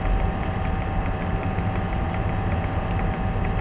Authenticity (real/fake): fake